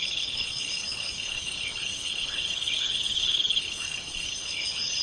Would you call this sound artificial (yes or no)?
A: yes